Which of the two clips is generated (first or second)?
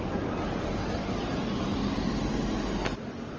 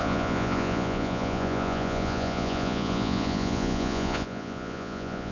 second